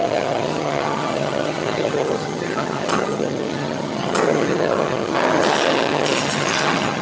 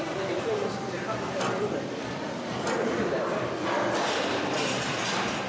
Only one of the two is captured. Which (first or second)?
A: second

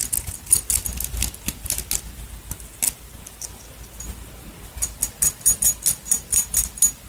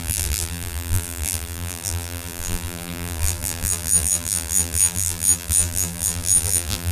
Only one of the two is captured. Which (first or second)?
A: first